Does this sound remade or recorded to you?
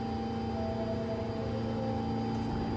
recorded